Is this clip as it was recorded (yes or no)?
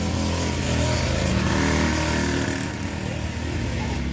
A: yes